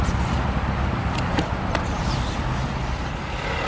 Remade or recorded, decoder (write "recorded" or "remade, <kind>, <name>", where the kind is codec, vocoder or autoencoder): recorded